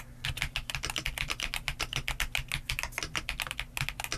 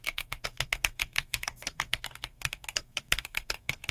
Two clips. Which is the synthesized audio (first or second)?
second